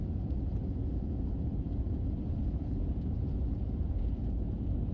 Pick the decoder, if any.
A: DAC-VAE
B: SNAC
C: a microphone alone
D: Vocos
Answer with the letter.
D